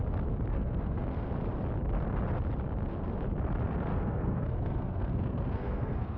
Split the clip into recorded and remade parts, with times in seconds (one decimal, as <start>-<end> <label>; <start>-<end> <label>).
0.0-0.5 recorded; 0.5-1.3 remade; 1.3-3.9 recorded; 3.9-6.2 remade